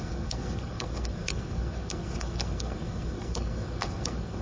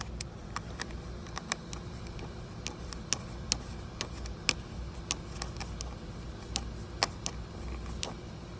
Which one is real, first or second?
second